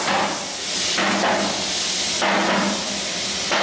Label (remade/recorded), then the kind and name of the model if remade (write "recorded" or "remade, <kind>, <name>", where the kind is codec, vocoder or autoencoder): recorded